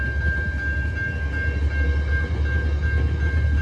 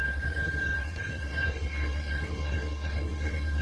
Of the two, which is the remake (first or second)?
second